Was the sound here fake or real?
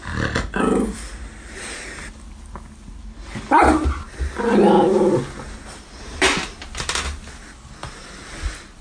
real